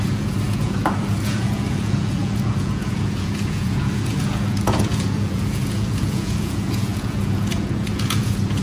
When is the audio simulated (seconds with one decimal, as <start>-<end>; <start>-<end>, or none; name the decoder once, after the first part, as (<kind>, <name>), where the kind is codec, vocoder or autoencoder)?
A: 0.0-8.6 (vocoder, Vocos)